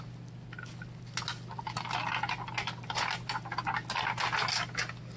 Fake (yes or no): no